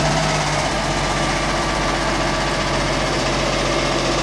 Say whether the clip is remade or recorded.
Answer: remade